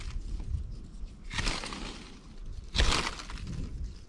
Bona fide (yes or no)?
yes